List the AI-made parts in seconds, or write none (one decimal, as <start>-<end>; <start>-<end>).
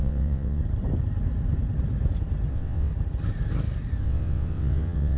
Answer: 0.0-0.6; 2.5-2.9; 4.0-5.2